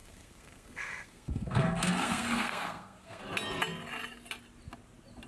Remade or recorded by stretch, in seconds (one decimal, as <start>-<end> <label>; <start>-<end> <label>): 0.0-3.2 remade; 3.2-5.3 recorded

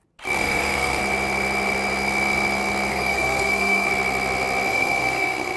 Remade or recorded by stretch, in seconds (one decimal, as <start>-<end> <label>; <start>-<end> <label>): 0.0-0.4 recorded; 0.4-1.0 remade; 1.0-2.9 recorded; 2.9-3.9 remade; 3.9-4.7 recorded; 4.7-5.6 remade